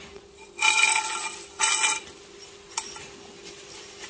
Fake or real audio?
real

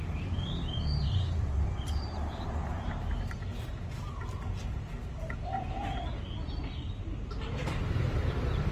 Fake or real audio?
real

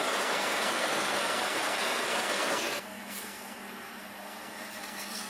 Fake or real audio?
fake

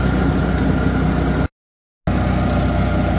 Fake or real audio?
real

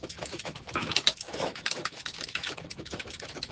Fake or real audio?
fake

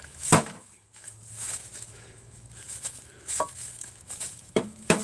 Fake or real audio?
fake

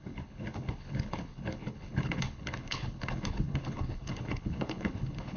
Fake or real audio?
fake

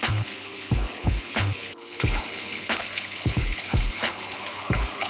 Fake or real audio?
fake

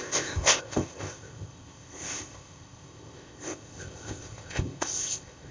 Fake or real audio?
fake